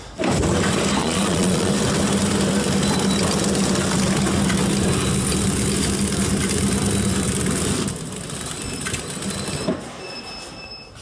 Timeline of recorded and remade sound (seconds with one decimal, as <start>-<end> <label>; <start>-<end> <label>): 0.0-1.0 recorded; 1.0-1.7 remade; 1.7-11.0 recorded